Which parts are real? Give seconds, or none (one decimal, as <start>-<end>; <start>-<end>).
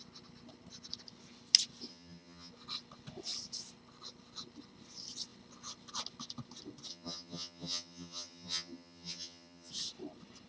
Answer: 0.0-1.9; 2.5-6.9; 9.7-10.5